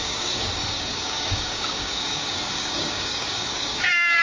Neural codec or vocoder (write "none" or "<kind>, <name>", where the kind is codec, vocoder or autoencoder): codec, DAC